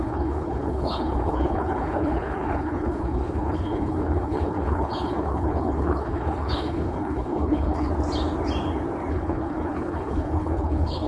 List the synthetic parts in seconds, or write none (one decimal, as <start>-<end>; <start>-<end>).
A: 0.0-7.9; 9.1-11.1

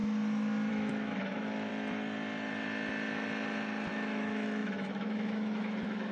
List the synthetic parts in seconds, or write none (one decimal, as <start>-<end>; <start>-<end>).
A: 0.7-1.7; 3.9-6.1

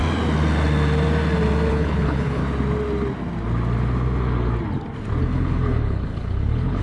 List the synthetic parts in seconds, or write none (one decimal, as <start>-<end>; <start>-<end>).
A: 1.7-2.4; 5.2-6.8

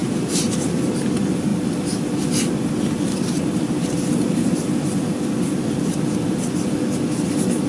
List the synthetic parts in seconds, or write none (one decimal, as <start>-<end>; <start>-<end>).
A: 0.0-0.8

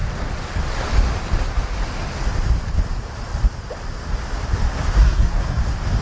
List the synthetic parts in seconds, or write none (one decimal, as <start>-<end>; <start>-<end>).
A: 5.0-5.6